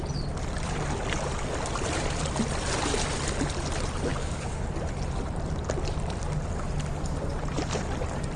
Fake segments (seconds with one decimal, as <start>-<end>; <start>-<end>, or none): 4.1-4.6